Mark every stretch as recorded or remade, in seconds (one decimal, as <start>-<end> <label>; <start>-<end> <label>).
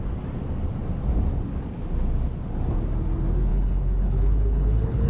0.0-3.5 recorded; 3.5-5.1 remade